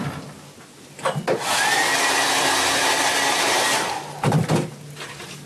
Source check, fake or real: real